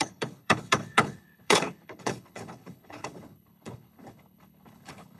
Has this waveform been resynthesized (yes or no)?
yes